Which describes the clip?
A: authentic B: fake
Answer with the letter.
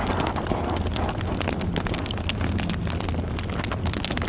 A